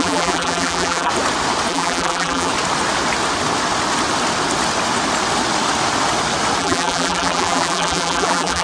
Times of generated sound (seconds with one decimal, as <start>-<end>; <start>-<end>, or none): 0.0-1.1; 1.7-2.5; 6.6-8.6

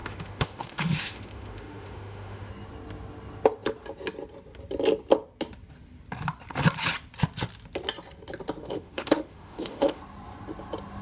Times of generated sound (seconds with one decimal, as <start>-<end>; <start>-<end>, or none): 0.0-2.5; 8.6-10.0

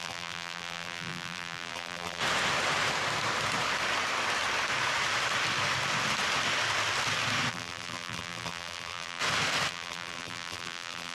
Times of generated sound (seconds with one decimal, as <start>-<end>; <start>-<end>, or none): 0.0-2.2; 7.5-9.2; 9.7-11.1

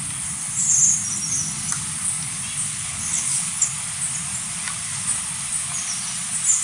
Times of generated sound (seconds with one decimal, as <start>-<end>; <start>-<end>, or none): 2.6-3.7

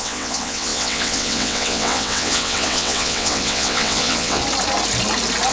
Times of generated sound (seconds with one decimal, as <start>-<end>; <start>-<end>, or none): 0.0-4.4

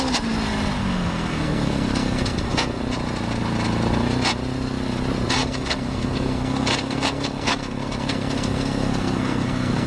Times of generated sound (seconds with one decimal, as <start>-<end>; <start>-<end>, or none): 0.8-2.8; 5.4-9.9

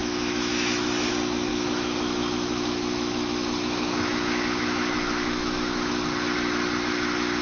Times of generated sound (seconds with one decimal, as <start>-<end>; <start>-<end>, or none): 0.0-1.1; 1.5-5.9

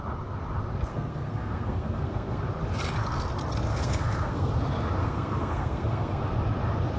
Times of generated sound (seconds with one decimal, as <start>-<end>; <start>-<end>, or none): 0.9-2.4; 3.7-4.5; 5.0-6.2